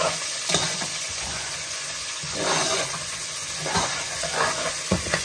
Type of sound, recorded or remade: remade